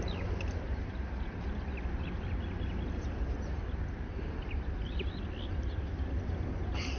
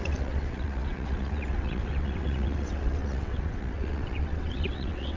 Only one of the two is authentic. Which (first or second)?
first